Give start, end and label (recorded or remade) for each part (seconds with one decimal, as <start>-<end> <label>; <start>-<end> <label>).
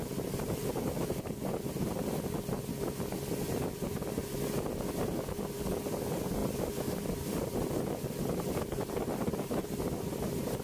0.0-2.0 remade; 2.0-10.6 recorded